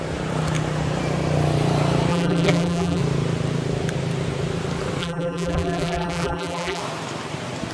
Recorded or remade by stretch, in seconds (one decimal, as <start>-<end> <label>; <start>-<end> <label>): 0.0-2.1 recorded; 2.1-3.0 remade; 3.0-5.0 recorded; 5.0-6.8 remade; 6.8-7.7 recorded